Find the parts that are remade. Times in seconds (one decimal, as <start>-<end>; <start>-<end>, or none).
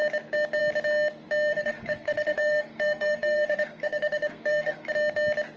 1.5-4.9